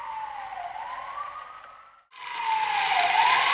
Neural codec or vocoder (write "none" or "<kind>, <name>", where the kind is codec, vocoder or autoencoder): none